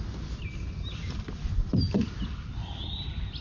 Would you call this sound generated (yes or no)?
no